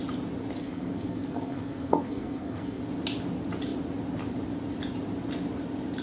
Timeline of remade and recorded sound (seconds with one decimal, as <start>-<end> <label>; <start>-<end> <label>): 0.0-0.6 recorded; 0.6-2.8 remade; 2.8-6.0 recorded